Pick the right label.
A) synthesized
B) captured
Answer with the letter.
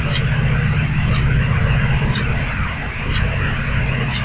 B